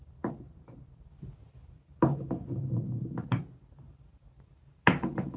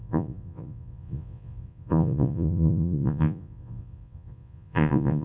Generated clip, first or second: second